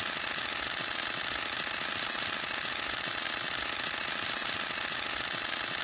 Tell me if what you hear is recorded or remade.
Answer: recorded